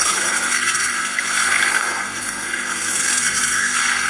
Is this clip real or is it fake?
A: fake